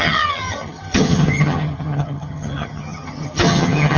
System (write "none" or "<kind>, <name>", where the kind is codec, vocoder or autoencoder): vocoder, HiFi-GAN